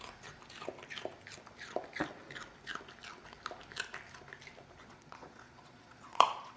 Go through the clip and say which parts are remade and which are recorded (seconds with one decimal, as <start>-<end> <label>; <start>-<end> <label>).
0.0-4.8 recorded; 4.8-6.6 remade